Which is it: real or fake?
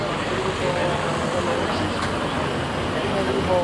real